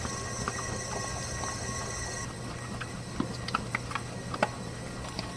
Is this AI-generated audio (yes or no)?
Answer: no